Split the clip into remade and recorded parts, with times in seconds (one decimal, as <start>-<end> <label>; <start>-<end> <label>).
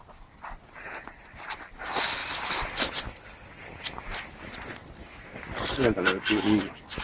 0.0-7.0 recorded